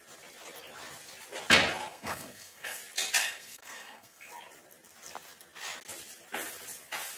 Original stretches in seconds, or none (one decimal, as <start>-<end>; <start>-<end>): 0.0-1.9; 2.8-3.2; 4.3-7.2